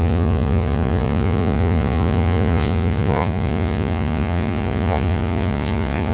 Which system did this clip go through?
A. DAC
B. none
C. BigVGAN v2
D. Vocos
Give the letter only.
D